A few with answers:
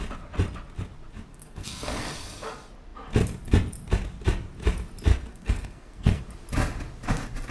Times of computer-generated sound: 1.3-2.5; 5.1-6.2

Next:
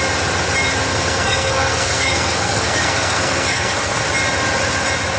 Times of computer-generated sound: 0.9-4.0

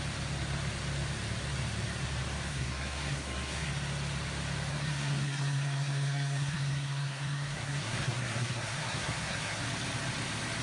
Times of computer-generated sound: 2.5-3.7; 4.7-9.6

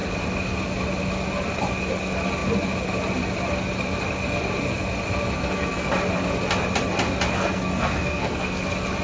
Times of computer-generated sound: 5.4-5.9; 7.4-8.6

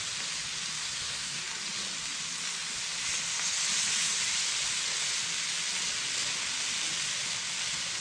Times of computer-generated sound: 0.8-1.4

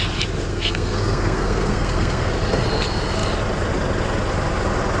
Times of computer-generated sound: 0.5-2.3

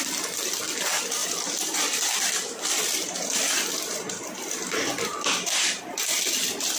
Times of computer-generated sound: none